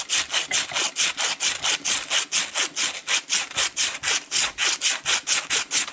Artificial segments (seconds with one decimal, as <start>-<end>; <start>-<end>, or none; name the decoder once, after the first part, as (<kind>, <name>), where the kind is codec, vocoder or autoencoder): none